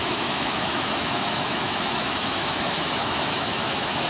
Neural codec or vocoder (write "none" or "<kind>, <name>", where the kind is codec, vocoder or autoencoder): autoencoder, DAC-VAE